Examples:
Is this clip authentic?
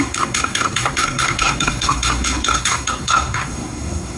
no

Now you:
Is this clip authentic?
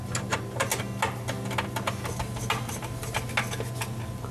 yes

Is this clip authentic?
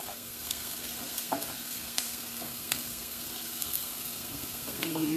no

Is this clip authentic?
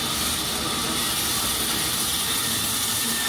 yes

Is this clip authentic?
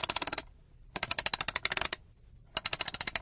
yes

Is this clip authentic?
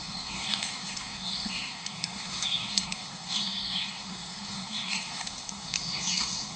no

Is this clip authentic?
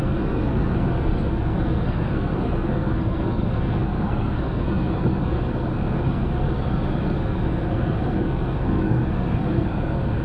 no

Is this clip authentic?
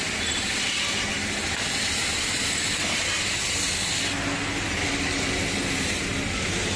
yes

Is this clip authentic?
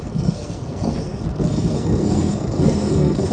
no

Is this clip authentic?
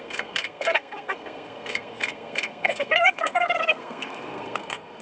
no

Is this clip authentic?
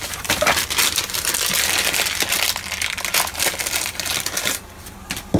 yes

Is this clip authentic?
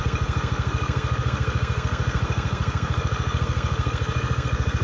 no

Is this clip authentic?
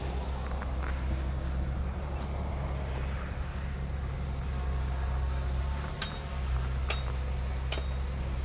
yes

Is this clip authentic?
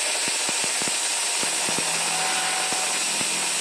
yes